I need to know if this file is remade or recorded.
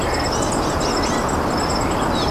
recorded